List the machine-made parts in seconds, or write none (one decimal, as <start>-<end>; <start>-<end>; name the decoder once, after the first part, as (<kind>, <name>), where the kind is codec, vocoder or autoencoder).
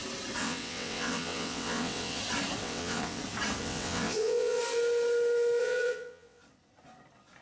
0.4-2.2 (vocoder, WaveNeXt); 2.6-3.2; 3.6-4.6; 5.6-6.4